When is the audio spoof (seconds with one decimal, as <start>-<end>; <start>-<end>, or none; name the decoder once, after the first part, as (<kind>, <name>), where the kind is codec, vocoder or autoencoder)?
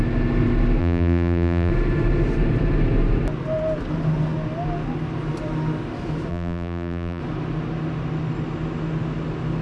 0.8-1.7 (vocoder, BigVGAN v2); 6.3-7.2